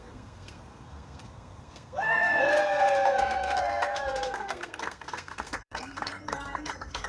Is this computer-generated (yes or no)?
yes